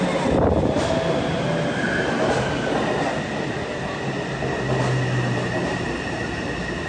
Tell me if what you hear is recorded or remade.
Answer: recorded